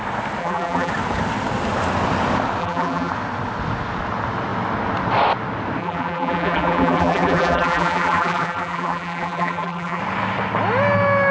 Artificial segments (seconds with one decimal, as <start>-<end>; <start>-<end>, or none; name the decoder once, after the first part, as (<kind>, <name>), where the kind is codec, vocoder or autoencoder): 0.4-0.9 (vocoder, BigVGAN v2); 2.6-3.1; 5.8-10.0